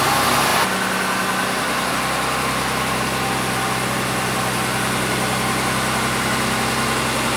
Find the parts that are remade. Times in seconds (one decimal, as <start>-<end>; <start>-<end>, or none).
none